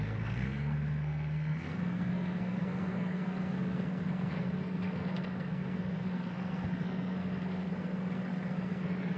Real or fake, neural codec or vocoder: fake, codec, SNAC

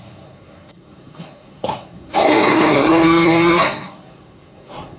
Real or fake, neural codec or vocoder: fake, codec, SNAC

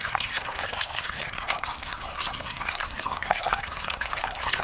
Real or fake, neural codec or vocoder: fake, codec, SNAC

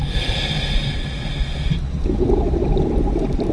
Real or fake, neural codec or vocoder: real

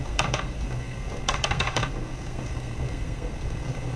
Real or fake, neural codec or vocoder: fake, codec, SNAC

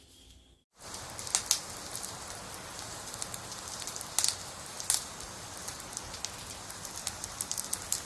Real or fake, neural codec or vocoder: real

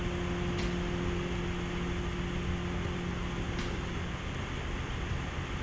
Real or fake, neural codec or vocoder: real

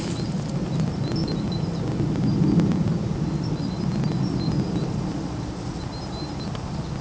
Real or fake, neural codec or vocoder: real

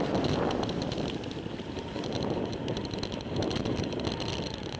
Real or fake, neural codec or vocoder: real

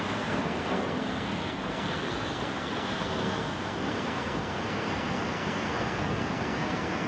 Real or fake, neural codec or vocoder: fake, codec, SNAC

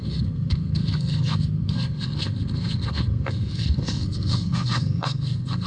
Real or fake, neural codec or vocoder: fake, codec, SNAC